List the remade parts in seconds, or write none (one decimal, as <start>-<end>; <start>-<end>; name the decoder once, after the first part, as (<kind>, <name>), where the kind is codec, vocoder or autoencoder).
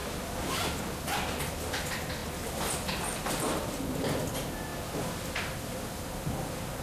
none